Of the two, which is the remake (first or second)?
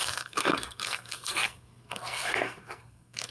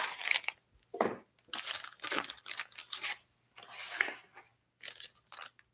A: first